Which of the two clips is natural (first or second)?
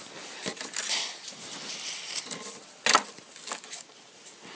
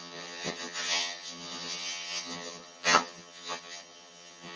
first